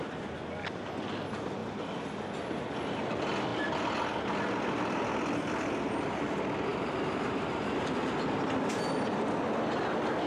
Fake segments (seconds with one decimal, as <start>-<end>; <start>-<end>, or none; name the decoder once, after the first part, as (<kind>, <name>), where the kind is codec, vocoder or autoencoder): none